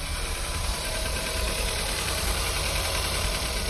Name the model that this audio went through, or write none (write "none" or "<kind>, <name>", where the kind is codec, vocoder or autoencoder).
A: vocoder, BigVGAN v2